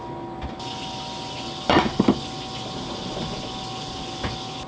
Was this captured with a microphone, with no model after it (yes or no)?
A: yes